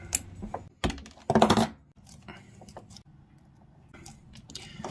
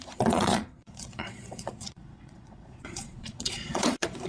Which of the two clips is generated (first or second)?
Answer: second